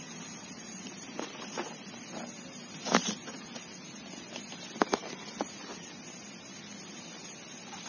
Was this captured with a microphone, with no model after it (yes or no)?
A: yes